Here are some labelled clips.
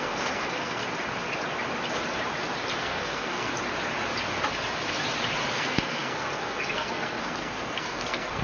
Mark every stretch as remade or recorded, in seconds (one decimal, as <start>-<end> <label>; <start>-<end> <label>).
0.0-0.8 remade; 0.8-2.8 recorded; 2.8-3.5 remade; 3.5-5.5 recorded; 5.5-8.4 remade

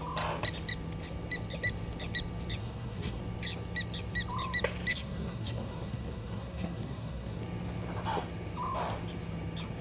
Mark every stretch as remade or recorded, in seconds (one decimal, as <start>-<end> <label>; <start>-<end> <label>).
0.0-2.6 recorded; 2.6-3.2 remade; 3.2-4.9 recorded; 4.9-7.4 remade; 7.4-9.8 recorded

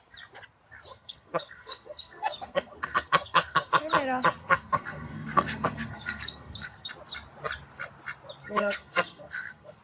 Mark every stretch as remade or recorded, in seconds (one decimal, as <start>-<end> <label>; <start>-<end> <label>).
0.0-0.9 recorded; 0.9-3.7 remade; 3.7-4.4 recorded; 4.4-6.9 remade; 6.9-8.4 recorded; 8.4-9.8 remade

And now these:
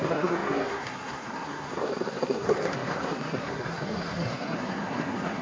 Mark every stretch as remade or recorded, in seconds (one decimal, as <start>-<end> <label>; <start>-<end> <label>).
0.0-5.4 remade

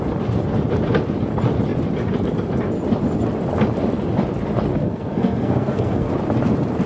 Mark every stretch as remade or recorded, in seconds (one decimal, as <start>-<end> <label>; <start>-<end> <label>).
0.0-4.7 recorded; 4.7-6.1 remade; 6.1-6.9 recorded

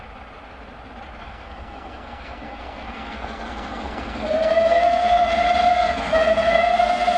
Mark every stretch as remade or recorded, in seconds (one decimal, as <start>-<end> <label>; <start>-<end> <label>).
0.0-1.2 recorded; 1.2-5.3 remade; 5.3-5.7 recorded; 5.7-7.2 remade

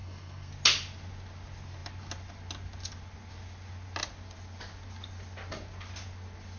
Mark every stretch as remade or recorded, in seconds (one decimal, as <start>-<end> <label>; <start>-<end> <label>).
0.0-0.5 remade; 0.5-6.6 recorded